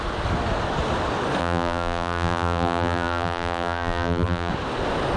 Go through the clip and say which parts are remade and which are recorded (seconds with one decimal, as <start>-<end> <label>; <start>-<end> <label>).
0.0-1.4 recorded; 1.4-4.5 remade; 4.5-5.2 recorded